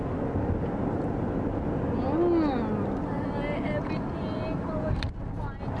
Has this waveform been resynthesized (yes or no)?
no